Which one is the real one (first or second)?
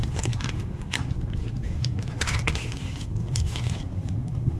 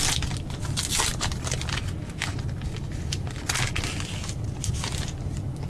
second